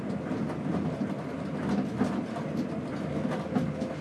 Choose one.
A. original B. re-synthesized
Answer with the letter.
A